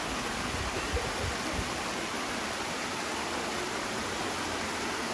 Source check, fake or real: real